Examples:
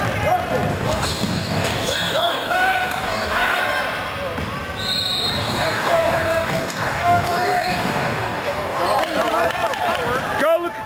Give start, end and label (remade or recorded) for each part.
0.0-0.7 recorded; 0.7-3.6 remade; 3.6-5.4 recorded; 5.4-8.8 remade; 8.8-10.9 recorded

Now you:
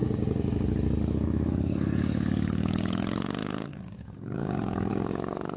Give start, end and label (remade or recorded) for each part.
0.0-1.0 recorded; 1.0-5.6 remade

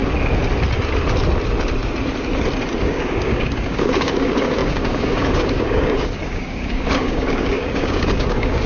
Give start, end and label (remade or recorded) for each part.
0.0-2.8 recorded; 2.8-8.7 remade

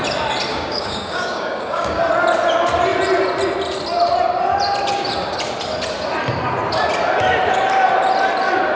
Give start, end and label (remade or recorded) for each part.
0.0-0.5 recorded; 0.5-2.0 remade; 2.0-8.7 recorded

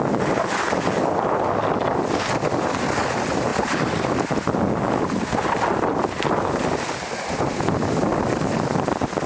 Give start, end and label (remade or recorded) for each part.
0.0-9.3 recorded

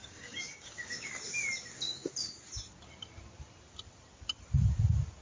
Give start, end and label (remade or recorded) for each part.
0.0-1.1 remade; 1.1-5.2 recorded

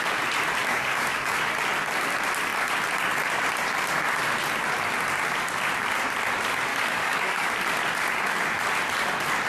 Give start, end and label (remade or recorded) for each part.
0.0-0.6 recorded; 0.6-1.4 remade; 1.4-6.7 recorded; 6.7-7.5 remade; 7.5-9.5 recorded